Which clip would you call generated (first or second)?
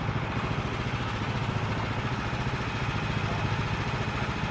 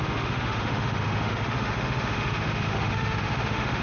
second